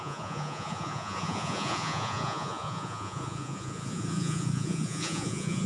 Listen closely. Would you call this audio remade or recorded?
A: remade